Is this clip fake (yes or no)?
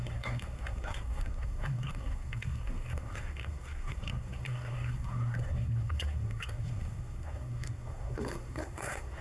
yes